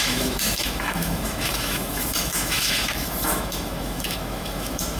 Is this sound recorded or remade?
remade